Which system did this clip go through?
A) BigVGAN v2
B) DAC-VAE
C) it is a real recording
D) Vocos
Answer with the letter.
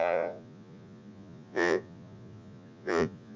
D